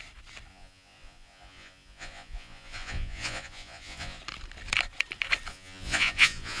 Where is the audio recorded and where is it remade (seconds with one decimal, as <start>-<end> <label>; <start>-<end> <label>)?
0.0-0.5 recorded; 0.5-4.2 remade; 4.2-5.5 recorded; 5.5-6.6 remade